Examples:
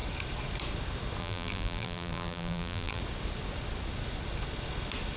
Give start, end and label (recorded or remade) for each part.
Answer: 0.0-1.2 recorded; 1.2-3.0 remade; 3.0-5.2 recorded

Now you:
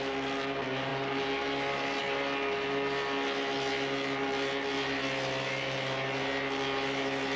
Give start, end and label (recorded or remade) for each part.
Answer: 0.0-7.4 recorded

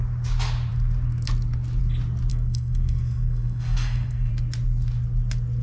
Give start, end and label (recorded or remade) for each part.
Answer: 0.0-2.3 recorded; 2.3-4.3 remade; 4.3-5.6 recorded

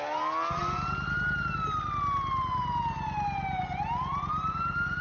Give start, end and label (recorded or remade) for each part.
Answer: 0.0-5.0 recorded